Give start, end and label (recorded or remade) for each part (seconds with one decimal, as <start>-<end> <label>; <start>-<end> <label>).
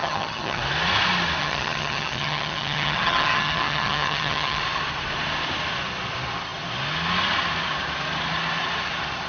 0.0-0.6 remade; 0.6-1.4 recorded; 1.4-4.6 remade; 4.6-9.3 recorded